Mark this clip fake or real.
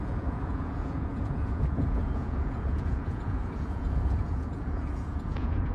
fake